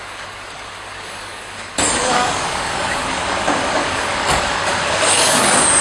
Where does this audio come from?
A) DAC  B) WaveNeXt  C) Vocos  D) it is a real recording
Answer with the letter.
A